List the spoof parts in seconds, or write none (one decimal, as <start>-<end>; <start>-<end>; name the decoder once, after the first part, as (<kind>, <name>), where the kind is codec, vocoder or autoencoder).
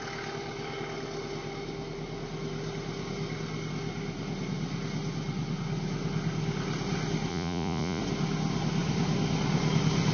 7.3-8.0 (vocoder, Vocos)